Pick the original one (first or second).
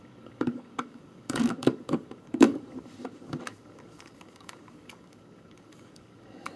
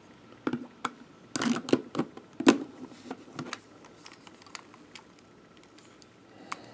second